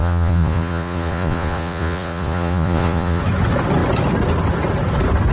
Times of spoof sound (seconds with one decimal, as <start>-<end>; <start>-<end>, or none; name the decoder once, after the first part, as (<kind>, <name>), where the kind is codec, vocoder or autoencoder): 0.0-3.2 (vocoder, Vocos)